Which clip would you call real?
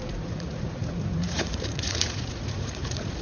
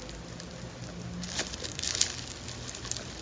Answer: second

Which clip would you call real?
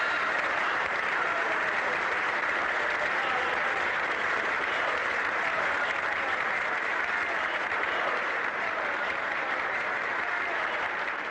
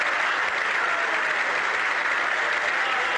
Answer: second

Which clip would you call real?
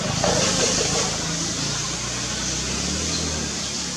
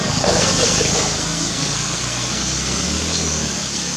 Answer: first